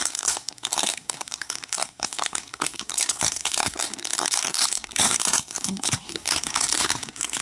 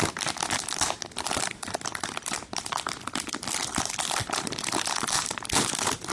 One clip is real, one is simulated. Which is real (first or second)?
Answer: second